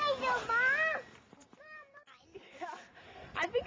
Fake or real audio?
real